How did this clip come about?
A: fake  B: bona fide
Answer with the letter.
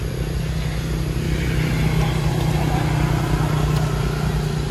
B